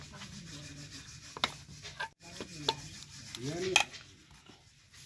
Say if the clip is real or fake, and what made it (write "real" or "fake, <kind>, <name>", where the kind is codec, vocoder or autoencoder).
real